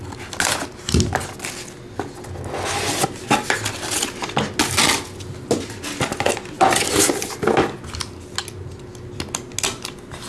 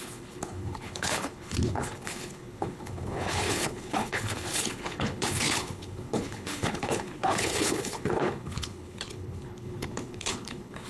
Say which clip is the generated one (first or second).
second